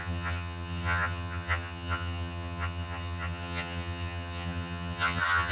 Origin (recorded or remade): remade